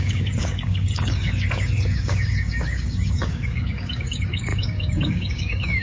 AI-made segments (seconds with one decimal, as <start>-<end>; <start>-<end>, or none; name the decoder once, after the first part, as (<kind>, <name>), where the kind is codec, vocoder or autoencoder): 0.0-5.8 (codec, DAC)